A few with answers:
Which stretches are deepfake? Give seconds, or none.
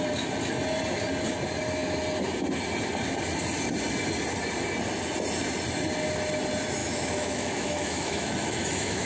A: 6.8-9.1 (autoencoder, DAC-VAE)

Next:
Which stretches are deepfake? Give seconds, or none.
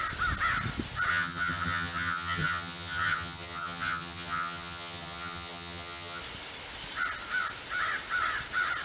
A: 1.1-6.2 (vocoder, HiFi-GAN)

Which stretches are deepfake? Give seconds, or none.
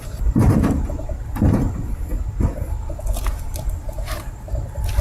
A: 0.0-2.1 (vocoder, BigVGAN v2); 3.5-5.0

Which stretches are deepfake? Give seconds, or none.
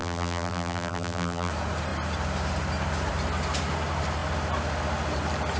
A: 0.0-1.5 (vocoder, BigVGAN v2)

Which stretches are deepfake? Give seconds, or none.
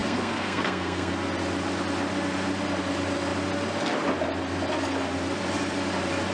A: 0.0-1.1 (codec, SNAC)